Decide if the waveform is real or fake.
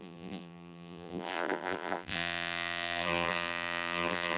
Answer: fake